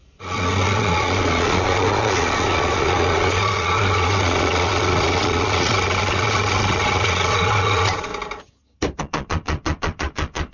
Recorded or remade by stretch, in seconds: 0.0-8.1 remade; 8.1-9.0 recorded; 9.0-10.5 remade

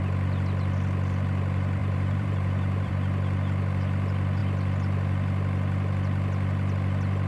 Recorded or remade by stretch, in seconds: 0.0-1.8 recorded; 1.8-2.9 remade; 2.9-7.3 recorded

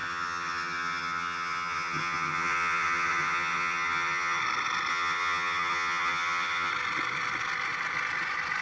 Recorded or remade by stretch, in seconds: 0.0-4.4 remade; 4.4-4.9 recorded; 4.9-6.7 remade; 6.7-8.6 recorded

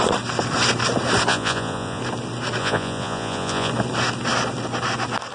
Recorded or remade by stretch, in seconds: 0.0-1.3 recorded; 1.3-2.0 remade; 2.0-2.6 recorded; 2.6-3.7 remade; 3.7-5.3 recorded

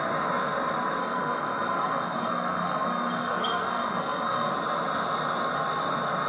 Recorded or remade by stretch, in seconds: 0.0-1.0 recorded; 1.0-4.5 remade; 4.5-6.3 recorded